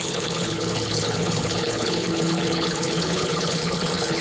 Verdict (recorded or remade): remade